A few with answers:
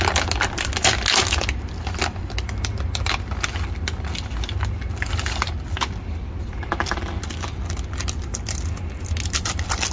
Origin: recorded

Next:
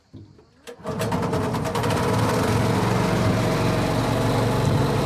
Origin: recorded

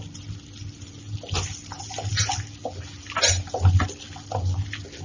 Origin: recorded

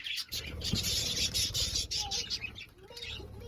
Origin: remade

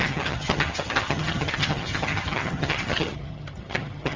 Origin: remade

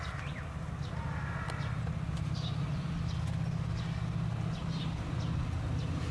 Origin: recorded